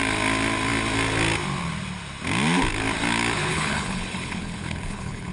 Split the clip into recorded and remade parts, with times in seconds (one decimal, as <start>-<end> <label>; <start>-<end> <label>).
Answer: 0.0-3.5 recorded; 3.5-5.3 remade